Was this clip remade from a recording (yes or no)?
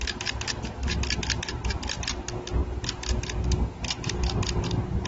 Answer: no